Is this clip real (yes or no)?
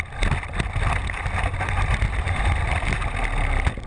yes